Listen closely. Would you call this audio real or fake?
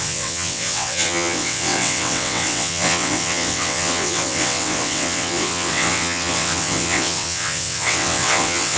fake